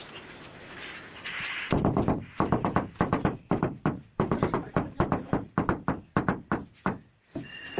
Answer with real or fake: real